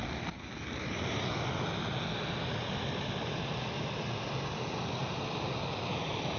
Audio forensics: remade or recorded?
recorded